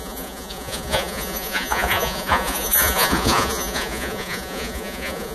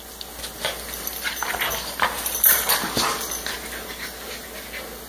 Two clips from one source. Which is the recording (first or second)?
second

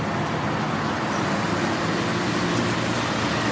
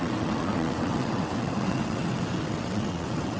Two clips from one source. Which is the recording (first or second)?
first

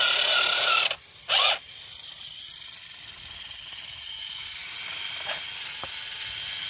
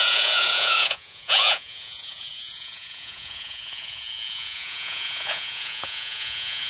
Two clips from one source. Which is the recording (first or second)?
first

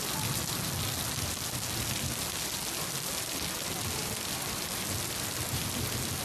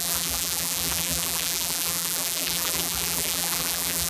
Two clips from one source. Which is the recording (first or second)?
first